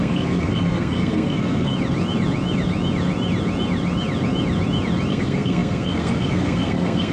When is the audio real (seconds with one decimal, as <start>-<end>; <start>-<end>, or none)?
1.7-5.1